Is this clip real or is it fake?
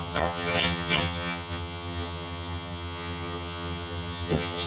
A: fake